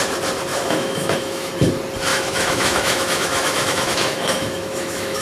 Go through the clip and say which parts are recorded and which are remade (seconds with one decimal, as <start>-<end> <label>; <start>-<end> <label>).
0.0-0.5 recorded; 0.5-1.5 remade; 1.5-2.1 recorded; 2.1-5.2 remade